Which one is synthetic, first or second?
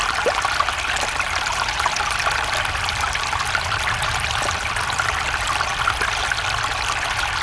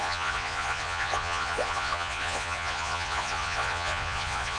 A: second